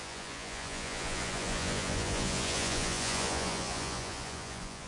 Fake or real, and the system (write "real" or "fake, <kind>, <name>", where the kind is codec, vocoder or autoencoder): fake, vocoder, Vocos